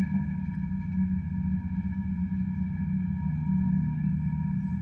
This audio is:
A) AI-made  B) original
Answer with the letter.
B